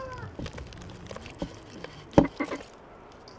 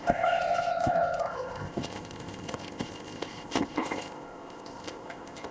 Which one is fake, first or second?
second